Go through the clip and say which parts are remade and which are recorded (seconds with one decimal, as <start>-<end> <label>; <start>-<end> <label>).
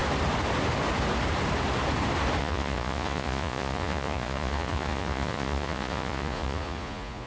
0.0-2.4 recorded; 2.4-7.3 remade